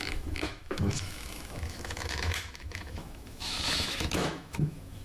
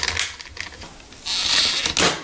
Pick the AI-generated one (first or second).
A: first